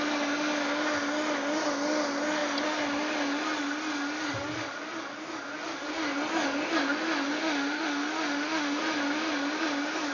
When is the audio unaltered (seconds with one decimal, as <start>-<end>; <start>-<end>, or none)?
0.0-7.4; 8.8-10.1